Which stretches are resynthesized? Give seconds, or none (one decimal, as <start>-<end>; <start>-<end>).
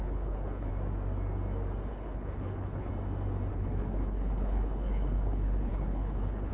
0.0-0.7; 1.9-2.9; 3.5-6.5